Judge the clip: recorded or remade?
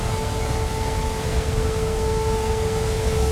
remade